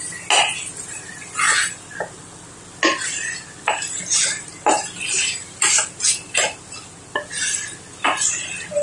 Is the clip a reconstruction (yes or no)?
no